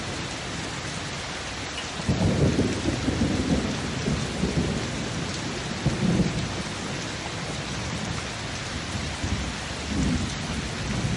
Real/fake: real